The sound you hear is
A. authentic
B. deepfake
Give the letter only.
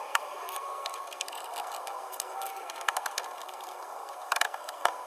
B